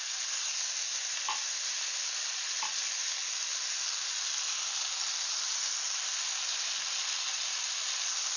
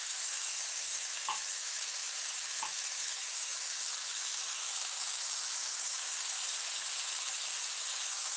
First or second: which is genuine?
first